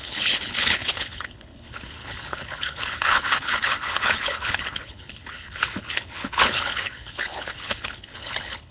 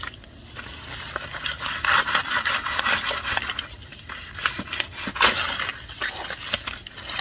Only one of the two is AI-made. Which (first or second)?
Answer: first